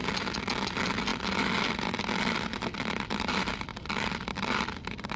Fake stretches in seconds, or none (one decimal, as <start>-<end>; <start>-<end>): 3.7-4.6